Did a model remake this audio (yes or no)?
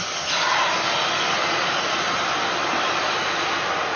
no